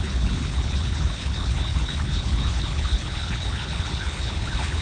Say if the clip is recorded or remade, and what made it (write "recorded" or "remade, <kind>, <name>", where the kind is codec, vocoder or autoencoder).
remade, codec, HILCodec